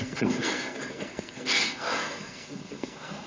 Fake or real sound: fake